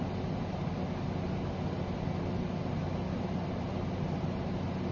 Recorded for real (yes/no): yes